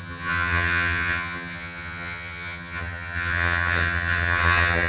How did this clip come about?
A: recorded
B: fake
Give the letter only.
B